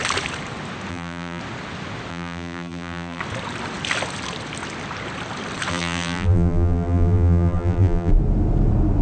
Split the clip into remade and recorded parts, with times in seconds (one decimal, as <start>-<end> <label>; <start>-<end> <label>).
0.0-0.9 recorded; 0.9-1.4 remade; 1.4-2.1 recorded; 2.1-3.2 remade; 3.2-5.7 recorded; 5.7-8.1 remade; 8.1-9.0 recorded